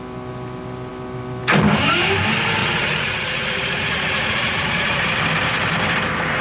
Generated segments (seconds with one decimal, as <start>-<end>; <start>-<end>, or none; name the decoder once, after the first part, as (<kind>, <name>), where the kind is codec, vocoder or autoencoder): 2.6-5.0 (vocoder, Vocos)